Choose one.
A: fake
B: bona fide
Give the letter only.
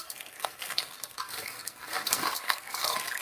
A